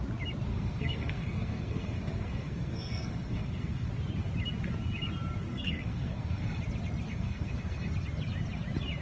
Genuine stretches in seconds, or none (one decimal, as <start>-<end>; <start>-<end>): 0.0-0.5; 3.9-5.5; 6.6-7.1; 7.9-9.0